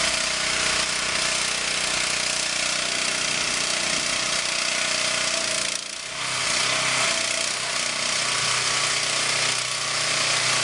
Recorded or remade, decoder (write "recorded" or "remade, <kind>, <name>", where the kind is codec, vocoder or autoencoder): recorded